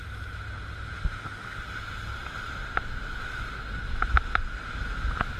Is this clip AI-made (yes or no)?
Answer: no